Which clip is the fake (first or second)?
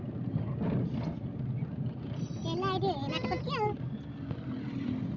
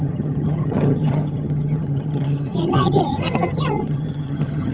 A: second